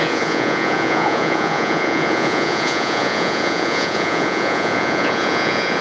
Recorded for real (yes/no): no